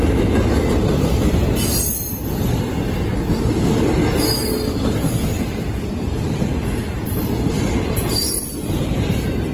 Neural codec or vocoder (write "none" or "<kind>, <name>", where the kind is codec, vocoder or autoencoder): none